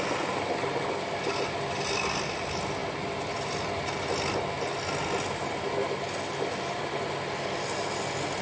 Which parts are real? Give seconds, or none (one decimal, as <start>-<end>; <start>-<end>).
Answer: 0.0-8.4